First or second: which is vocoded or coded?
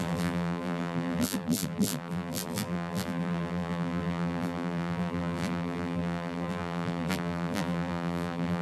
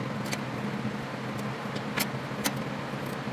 first